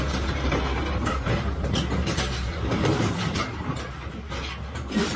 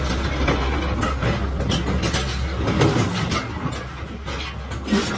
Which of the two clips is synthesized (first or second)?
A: first